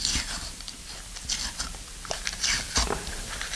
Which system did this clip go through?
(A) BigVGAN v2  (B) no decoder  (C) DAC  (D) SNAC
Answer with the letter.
B